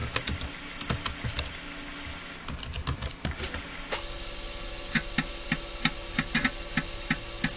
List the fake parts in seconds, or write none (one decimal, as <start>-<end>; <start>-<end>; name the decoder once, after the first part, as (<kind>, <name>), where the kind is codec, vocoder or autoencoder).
none